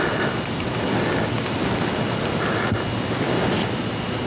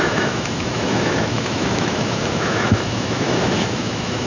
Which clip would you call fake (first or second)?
second